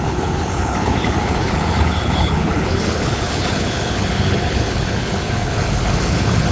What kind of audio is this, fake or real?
fake